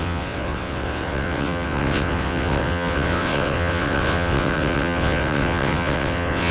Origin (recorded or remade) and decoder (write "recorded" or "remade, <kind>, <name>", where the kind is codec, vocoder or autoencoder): remade, vocoder, WaveNeXt